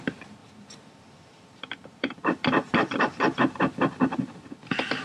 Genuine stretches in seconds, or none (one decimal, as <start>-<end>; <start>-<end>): 0.0-0.4; 3.4-5.0